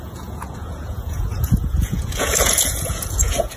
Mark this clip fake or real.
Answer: fake